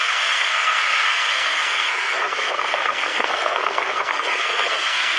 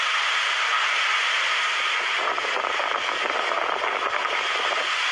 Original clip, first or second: second